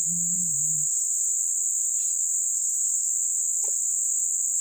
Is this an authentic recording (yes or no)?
no